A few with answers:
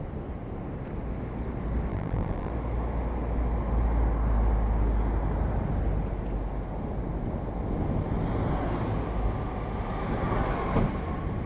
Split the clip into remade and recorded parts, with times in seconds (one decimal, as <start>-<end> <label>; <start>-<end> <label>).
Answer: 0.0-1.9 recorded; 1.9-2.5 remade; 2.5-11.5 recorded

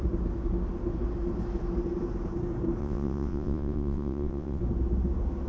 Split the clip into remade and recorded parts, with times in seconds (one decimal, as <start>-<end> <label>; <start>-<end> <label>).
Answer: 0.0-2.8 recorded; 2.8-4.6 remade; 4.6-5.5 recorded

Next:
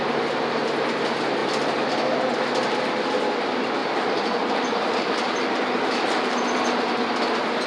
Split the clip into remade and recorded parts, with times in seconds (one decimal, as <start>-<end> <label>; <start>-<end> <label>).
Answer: 0.0-3.8 recorded; 3.8-6.6 remade; 6.6-7.7 recorded

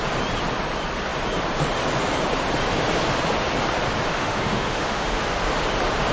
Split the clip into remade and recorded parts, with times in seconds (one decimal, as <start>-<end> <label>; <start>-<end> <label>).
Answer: 0.0-4.1 recorded; 4.1-5.2 remade; 5.2-6.1 recorded

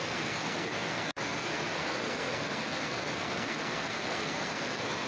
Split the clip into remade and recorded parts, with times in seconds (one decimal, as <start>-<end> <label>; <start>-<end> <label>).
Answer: 0.0-5.1 remade

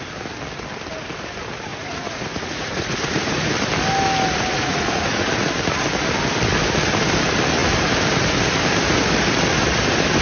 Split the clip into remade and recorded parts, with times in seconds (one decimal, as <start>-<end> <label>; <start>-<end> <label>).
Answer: 0.0-1.7 recorded; 1.7-3.5 remade; 3.5-4.5 recorded; 4.5-5.3 remade; 5.3-10.2 recorded